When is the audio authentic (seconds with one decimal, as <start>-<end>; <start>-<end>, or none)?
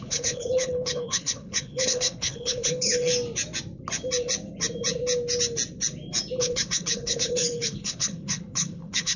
3.1-6.4